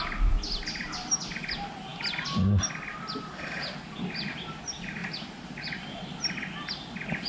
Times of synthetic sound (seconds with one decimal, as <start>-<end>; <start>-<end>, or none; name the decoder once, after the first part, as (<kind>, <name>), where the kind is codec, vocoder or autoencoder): none